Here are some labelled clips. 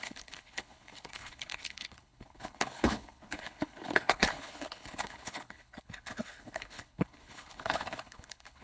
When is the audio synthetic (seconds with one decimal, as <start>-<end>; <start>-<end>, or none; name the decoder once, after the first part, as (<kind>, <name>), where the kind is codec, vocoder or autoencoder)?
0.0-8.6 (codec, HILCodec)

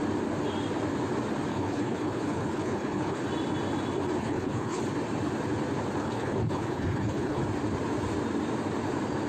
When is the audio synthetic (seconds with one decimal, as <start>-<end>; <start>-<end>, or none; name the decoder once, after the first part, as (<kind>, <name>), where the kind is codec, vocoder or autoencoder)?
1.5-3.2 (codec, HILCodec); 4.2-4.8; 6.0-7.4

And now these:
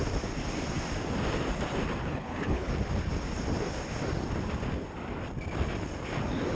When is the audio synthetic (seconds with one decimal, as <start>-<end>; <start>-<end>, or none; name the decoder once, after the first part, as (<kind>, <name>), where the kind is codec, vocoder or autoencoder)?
2.0-2.7 (codec, HILCodec)

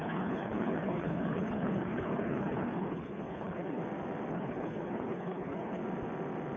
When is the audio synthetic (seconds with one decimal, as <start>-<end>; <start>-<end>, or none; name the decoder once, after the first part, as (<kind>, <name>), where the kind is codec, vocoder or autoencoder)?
0.0-3.8 (codec, HILCodec); 4.3-5.8